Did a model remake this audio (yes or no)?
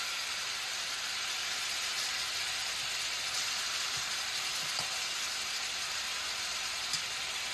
no